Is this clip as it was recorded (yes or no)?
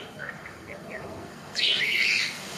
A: no